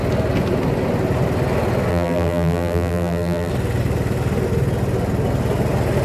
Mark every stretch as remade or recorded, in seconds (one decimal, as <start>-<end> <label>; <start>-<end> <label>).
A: 0.0-1.9 recorded; 1.9-3.5 remade; 3.5-6.0 recorded